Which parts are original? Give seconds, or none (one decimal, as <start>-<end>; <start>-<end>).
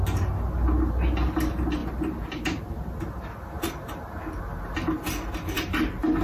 0.0-6.2